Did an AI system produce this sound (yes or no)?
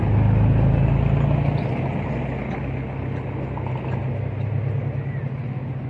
no